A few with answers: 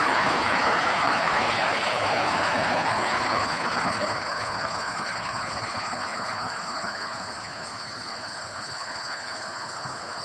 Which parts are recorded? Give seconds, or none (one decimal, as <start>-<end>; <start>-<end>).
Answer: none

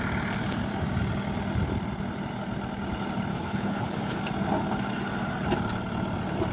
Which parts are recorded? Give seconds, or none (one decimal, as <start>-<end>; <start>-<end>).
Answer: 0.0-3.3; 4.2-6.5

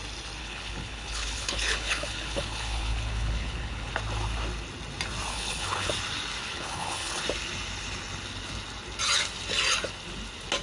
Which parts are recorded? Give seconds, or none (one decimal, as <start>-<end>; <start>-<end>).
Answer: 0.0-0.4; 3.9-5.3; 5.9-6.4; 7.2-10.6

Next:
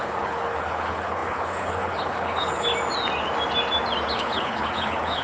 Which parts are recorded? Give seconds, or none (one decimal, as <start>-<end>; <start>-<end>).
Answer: 2.7-4.1

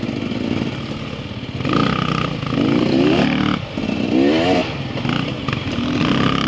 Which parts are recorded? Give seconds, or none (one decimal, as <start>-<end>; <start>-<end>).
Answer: 0.0-6.5

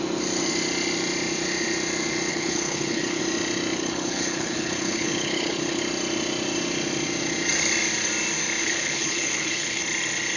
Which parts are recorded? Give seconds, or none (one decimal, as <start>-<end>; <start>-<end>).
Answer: 0.0-2.3; 3.2-3.8; 5.8-8.6; 9.8-10.4